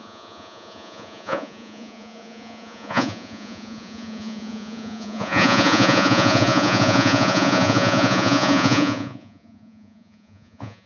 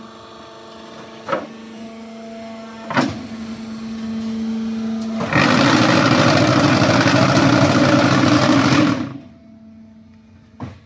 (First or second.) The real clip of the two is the second